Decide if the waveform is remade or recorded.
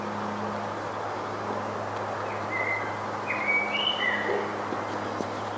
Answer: recorded